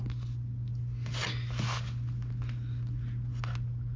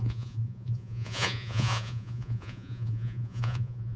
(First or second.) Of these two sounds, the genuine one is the first